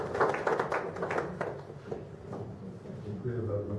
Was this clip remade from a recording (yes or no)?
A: no